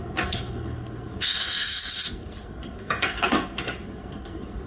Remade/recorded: remade